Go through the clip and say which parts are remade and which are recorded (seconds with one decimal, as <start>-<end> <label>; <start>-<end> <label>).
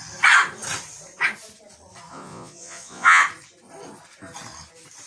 0.0-2.1 recorded; 2.1-3.2 remade; 3.2-5.1 recorded